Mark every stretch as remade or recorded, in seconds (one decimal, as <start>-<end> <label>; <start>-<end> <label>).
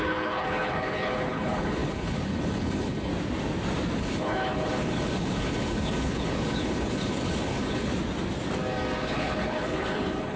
0.0-3.1 remade; 3.1-4.0 recorded; 4.0-7.9 remade; 7.9-9.0 recorded; 9.0-10.4 remade